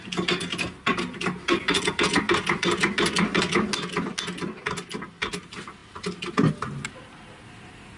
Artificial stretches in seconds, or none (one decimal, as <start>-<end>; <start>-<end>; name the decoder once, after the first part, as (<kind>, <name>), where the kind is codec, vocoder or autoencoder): none